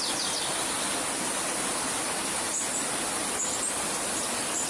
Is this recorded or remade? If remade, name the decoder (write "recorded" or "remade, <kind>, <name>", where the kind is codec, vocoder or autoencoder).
recorded